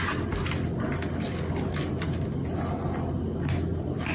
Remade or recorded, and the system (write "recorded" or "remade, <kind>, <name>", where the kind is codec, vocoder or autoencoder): recorded